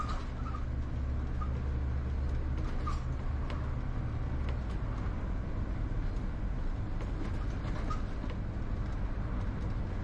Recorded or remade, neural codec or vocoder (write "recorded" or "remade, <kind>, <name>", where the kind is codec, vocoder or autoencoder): recorded